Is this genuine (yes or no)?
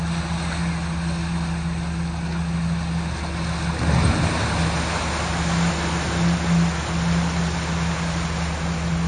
yes